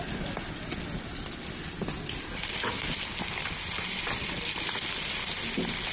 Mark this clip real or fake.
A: real